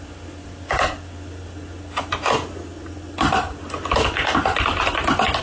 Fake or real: real